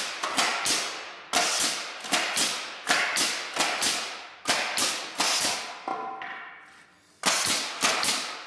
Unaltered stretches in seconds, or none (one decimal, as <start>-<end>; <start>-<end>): 0.0-8.5